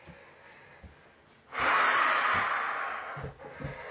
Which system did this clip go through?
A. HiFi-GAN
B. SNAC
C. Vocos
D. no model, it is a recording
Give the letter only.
D